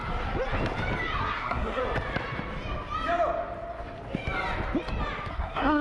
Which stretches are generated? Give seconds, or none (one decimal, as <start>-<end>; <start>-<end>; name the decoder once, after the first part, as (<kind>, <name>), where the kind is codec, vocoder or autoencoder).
1.2-1.8 (codec, SNAC); 5.3-5.8